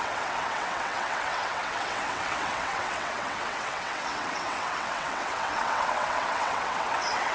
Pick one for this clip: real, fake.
fake